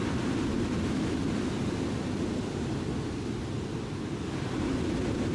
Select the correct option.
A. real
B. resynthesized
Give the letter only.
A